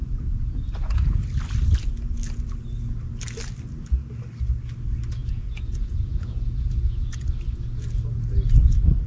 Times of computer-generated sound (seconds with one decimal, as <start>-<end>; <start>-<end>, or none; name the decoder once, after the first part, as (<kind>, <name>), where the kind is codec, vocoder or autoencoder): 0.0-1.2 (vocoder, Vocos); 5.2-6.7